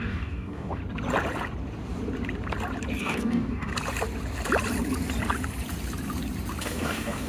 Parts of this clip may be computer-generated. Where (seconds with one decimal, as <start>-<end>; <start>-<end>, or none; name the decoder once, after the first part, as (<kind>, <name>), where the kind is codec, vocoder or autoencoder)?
0.0-0.8 (codec, DAC); 3.0-3.7; 6.6-7.3